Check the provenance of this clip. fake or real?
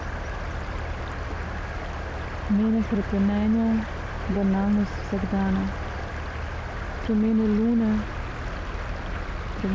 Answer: real